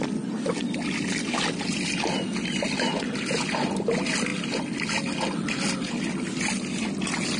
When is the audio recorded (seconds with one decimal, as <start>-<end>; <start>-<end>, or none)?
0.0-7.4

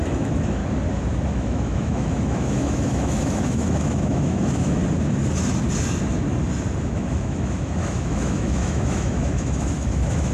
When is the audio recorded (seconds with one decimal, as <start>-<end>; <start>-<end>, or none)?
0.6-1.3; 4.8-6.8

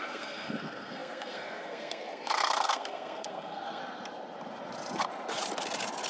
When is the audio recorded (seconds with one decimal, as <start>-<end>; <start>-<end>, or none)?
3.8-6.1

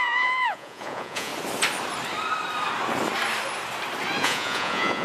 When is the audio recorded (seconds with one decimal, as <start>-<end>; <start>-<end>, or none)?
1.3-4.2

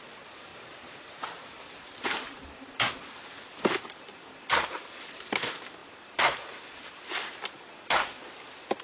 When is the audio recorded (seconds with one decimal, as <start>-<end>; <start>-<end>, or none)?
0.0-0.5; 2.9-8.8